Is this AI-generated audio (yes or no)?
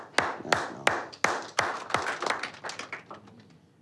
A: no